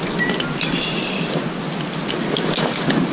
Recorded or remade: recorded